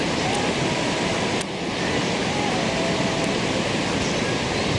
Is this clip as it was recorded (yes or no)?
yes